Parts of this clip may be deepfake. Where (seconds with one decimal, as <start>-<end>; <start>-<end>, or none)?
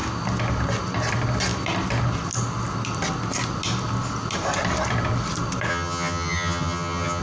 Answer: 5.7-7.2